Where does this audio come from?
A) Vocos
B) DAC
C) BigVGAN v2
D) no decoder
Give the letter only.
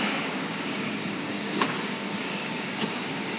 B